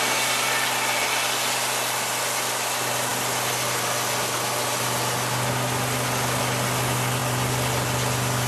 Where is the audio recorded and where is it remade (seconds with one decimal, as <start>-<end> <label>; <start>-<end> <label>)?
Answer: 0.0-8.5 recorded